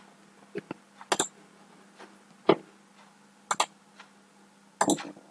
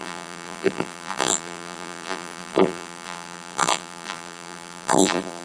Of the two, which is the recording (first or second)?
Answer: first